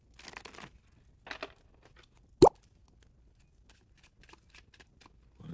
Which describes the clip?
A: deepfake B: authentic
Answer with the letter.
B